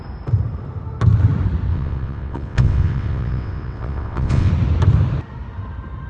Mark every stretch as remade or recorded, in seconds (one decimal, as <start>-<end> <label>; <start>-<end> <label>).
0.0-1.7 recorded; 1.7-4.5 remade; 4.5-6.1 recorded